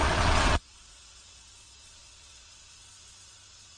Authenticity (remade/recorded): remade